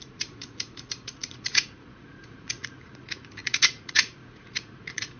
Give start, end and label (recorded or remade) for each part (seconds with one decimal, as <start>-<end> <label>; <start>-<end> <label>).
0.0-5.2 remade